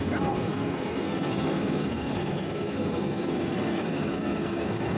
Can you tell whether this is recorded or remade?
remade